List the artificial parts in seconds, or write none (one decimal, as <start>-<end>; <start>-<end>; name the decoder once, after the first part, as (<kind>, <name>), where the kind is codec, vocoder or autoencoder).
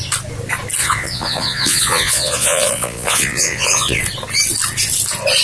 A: 0.8-4.0 (vocoder, Vocos)